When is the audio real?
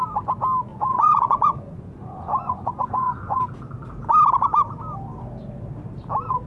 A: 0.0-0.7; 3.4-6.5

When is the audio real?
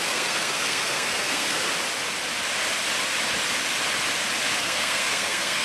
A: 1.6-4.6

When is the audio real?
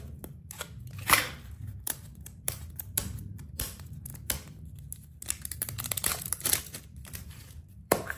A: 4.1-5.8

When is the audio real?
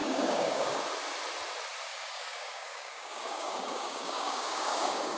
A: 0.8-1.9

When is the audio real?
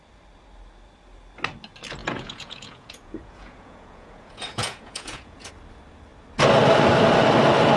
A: 0.0-2.0; 5.5-7.8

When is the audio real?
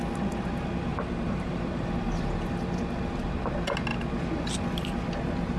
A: 0.0-0.9; 2.8-5.6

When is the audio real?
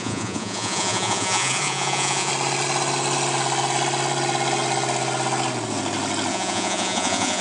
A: 2.3-6.3